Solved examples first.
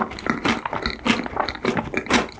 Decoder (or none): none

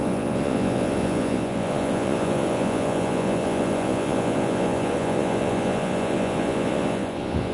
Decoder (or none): vocoder, Vocos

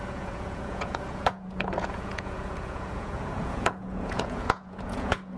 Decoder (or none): vocoder, Vocos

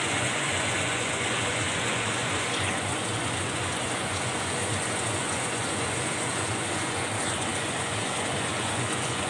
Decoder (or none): vocoder, Vocos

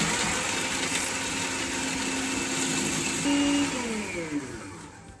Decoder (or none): none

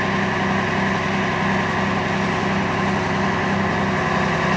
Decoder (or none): none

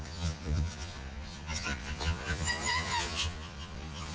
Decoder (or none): vocoder, Vocos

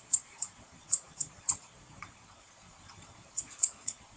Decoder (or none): vocoder, Vocos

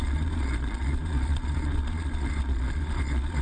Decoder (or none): vocoder, Vocos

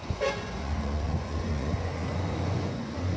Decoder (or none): vocoder, Vocos